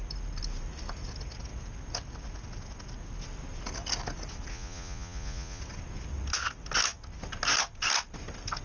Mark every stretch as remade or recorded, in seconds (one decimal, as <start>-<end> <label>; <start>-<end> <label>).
0.0-4.5 recorded; 4.5-5.6 remade; 5.6-8.6 recorded